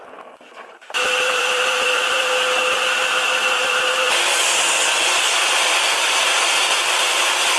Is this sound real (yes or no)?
no